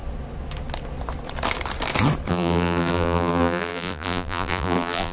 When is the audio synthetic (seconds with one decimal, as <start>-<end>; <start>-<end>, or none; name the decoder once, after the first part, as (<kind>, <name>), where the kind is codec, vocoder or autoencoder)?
2.3-5.1 (vocoder, BigVGAN v2)